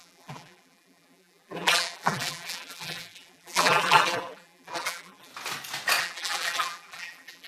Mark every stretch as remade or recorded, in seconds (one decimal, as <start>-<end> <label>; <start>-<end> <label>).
0.0-5.3 remade; 5.3-6.0 recorded; 6.0-7.5 remade

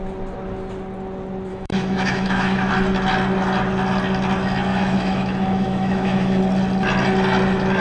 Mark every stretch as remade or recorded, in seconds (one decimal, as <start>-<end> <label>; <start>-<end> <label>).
0.0-1.5 recorded; 1.5-2.7 remade; 2.7-4.7 recorded; 4.7-6.4 remade; 6.4-7.8 recorded

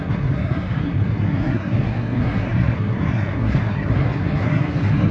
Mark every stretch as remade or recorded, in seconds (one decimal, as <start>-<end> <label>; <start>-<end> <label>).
0.0-5.1 remade

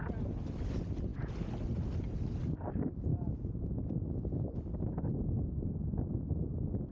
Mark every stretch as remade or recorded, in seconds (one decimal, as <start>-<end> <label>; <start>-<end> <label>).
0.0-3.1 recorded; 3.1-3.8 remade; 3.8-6.9 recorded

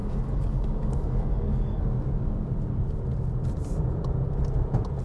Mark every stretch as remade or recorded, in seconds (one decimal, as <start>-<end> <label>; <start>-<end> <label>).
0.0-1.8 remade; 1.8-5.0 recorded

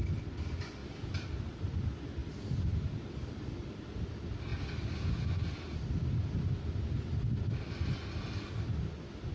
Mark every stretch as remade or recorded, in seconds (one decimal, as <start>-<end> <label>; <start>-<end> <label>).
0.0-9.3 recorded

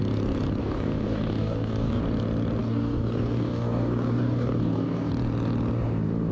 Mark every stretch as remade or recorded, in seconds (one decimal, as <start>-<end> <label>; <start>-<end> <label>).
0.0-0.6 recorded; 0.6-2.0 remade; 2.0-2.6 recorded; 2.6-5.1 remade; 5.1-6.3 recorded